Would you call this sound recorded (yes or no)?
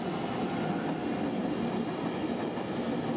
yes